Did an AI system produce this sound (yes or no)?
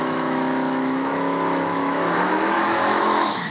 yes